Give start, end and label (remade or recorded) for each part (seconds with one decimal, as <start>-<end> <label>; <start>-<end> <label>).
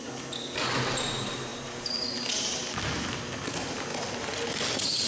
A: 0.0-5.1 recorded